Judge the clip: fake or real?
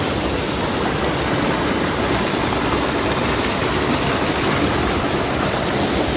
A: real